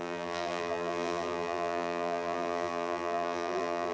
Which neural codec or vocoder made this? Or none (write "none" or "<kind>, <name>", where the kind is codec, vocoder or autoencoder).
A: vocoder, BigVGAN v2